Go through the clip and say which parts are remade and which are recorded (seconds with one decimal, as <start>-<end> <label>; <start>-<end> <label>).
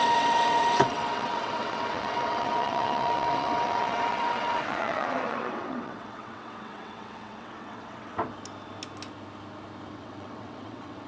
0.0-8.1 remade; 8.1-9.9 recorded; 9.9-11.1 remade